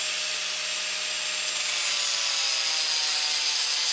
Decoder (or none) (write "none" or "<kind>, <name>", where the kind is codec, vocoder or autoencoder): none